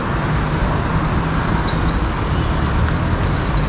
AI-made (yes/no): no